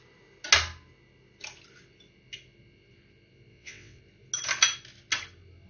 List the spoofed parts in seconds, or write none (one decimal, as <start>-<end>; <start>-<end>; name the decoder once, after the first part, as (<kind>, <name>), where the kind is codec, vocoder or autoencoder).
3.5-4.0 (vocoder, WaveNeXt)